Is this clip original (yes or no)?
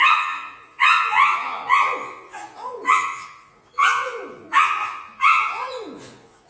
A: no